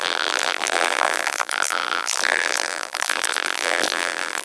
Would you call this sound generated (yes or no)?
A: yes